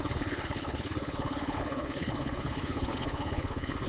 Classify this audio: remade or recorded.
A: remade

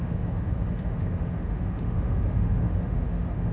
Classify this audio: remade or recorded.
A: remade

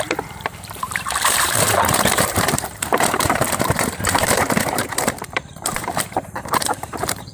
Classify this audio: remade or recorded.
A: remade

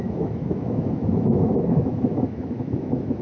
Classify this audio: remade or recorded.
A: remade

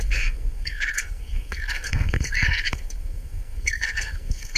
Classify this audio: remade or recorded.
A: remade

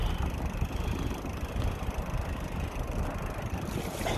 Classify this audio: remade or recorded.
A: recorded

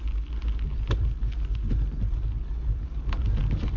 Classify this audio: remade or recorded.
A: recorded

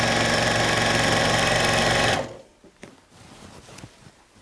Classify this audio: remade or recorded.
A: recorded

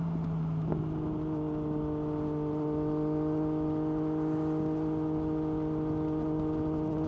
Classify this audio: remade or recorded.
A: recorded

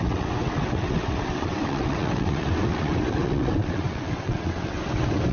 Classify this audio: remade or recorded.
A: remade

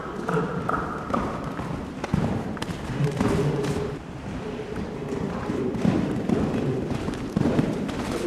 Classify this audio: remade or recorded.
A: remade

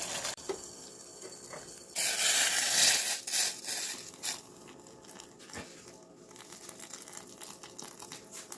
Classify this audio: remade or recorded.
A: recorded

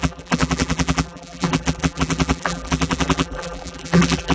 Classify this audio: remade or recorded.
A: remade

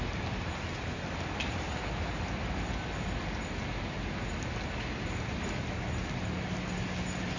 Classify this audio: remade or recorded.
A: recorded